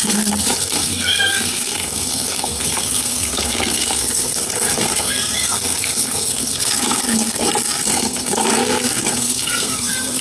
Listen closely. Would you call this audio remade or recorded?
remade